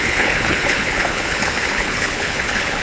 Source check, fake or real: fake